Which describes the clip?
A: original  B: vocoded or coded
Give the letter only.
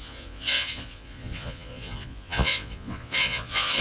B